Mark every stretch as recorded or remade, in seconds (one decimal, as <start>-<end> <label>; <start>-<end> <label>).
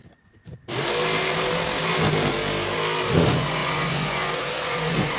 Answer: 0.0-3.1 recorded; 3.1-5.2 remade